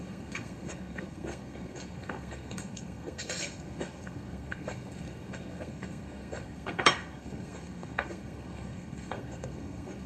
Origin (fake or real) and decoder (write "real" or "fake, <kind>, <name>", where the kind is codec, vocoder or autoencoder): fake, codec, SNAC